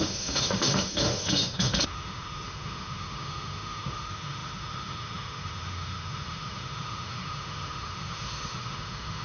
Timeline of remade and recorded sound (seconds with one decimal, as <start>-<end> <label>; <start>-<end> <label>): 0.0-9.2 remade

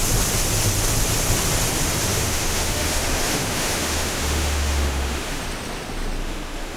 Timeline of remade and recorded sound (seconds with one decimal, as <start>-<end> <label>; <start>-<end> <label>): 0.0-2.1 recorded; 2.1-5.4 remade; 5.4-6.2 recorded; 6.2-6.8 remade

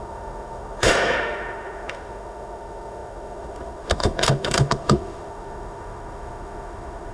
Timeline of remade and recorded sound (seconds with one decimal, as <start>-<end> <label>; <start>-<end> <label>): 0.0-7.1 remade

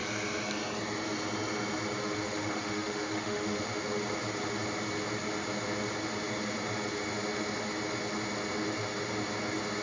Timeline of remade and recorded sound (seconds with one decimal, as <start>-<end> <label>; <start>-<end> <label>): 0.0-2.0 recorded; 2.0-3.6 remade; 3.6-9.8 recorded

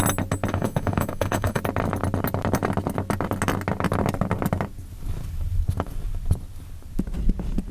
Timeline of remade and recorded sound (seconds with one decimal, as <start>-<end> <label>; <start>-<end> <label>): 0.0-0.5 recorded; 0.5-1.6 remade; 1.6-7.7 recorded